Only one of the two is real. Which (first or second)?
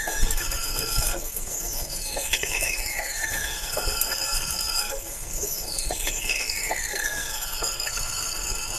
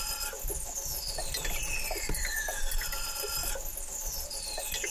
second